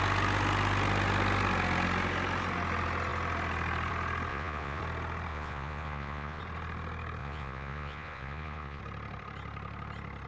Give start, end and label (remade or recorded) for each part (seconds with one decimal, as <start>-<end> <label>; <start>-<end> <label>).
0.0-4.3 recorded; 4.3-4.8 remade; 4.8-5.3 recorded; 5.3-6.4 remade; 6.4-7.2 recorded; 7.2-8.8 remade; 8.8-10.3 recorded